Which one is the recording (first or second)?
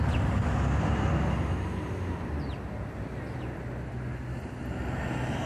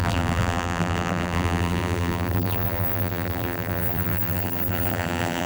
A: first